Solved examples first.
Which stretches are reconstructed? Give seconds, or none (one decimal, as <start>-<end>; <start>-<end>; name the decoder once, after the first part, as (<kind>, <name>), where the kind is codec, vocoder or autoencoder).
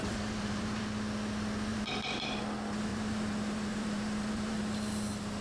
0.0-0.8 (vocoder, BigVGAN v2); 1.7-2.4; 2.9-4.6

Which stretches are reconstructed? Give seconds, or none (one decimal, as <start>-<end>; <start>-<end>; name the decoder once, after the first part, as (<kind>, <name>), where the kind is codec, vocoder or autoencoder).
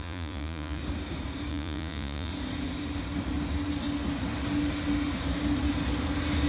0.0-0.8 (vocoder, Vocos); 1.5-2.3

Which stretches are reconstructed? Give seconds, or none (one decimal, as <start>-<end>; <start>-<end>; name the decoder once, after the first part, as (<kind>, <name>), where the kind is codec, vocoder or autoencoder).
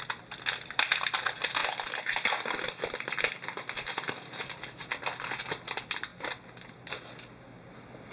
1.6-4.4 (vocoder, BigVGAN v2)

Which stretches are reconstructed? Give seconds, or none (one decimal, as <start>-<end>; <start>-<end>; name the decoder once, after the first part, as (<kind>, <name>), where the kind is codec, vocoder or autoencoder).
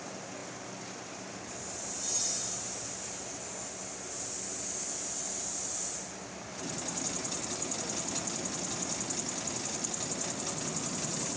none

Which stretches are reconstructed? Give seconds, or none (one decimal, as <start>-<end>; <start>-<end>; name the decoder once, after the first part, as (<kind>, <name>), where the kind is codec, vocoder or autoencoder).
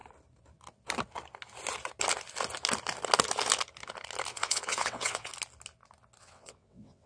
4.3-5.3 (vocoder, WaveNeXt); 6.2-7.1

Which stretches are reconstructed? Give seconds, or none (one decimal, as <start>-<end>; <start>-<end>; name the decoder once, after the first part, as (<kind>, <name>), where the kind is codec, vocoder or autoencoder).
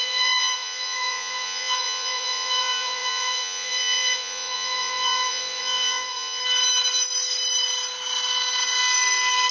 0.0-6.4 (vocoder, Vocos)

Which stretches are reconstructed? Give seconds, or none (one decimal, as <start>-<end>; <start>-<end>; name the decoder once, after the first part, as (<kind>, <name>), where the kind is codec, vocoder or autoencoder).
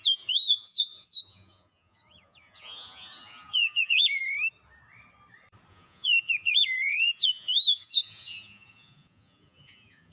0.0-4.2 (vocoder, Vocos); 5.7-10.1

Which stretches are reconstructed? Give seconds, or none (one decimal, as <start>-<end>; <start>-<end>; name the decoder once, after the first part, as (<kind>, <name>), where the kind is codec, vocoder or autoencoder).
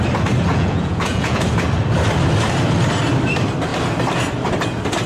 0.5-1.4 (vocoder, Vocos)